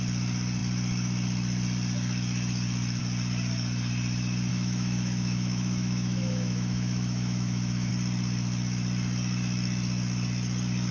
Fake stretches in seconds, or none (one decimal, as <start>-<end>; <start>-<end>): 4.5-7.9